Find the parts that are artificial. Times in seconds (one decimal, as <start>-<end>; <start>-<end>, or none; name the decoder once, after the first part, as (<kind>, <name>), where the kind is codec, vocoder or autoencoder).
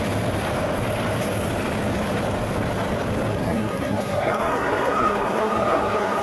3.3-6.2 (codec, SNAC)